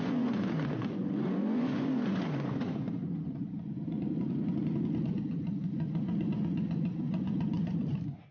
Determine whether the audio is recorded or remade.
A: remade